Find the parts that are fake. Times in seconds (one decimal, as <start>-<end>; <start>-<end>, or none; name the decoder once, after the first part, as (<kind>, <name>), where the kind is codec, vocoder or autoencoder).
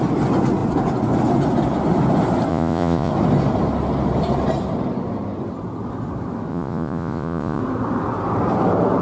2.5-3.1 (vocoder, Vocos); 6.5-7.6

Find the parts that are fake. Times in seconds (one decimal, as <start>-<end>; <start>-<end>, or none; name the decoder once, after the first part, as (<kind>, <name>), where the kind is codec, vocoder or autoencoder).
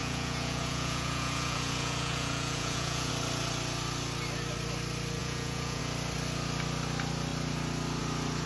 0.0-3.1 (vocoder, Vocos); 5.2-5.8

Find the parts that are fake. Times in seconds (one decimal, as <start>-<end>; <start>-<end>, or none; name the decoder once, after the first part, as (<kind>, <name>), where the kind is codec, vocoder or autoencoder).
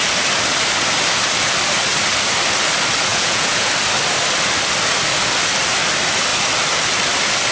3.1-3.7 (vocoder, Vocos)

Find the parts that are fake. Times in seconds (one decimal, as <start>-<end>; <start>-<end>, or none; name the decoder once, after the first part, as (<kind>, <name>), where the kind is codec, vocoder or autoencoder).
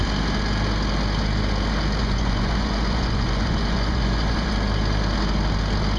2.0-4.5 (vocoder, Vocos)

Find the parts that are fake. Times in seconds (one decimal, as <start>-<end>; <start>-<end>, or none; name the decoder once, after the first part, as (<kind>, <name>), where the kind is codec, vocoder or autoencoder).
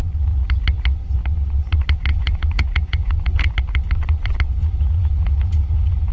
2.1-3.5 (vocoder, Vocos); 4.6-6.1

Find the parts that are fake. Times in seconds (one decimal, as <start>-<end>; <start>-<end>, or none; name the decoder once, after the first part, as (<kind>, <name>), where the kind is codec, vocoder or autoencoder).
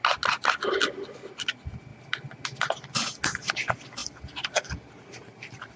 none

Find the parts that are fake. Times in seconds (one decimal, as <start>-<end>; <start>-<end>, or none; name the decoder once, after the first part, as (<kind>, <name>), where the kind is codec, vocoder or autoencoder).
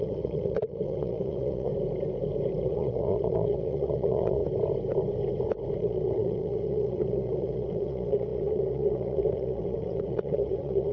0.0-1.7 (vocoder, Vocos); 2.6-4.4; 5.8-10.9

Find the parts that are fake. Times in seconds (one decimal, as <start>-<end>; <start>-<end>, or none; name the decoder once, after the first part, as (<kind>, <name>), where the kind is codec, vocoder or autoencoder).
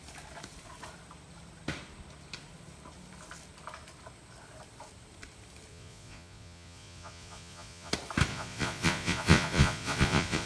5.7-7.9 (vocoder, Vocos); 8.3-10.5